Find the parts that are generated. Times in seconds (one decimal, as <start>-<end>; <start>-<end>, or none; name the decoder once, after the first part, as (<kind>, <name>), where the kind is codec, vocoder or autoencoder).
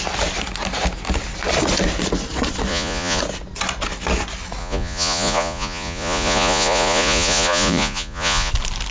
2.7-3.2 (vocoder, Vocos); 4.6-8.5